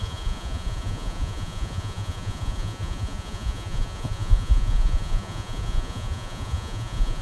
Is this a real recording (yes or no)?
no